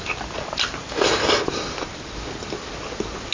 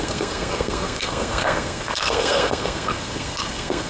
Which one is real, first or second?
first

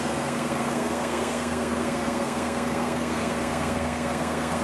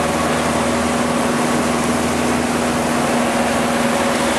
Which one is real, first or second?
second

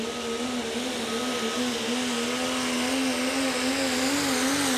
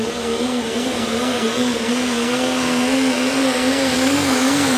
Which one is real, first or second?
first